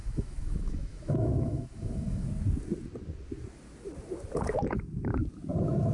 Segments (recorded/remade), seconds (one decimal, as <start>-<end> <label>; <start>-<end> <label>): 0.0-2.3 remade; 2.3-5.9 recorded